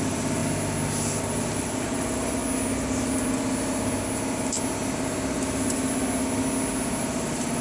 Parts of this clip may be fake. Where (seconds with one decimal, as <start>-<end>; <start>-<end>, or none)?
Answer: 0.0-0.4; 1.2-2.4; 7.0-7.6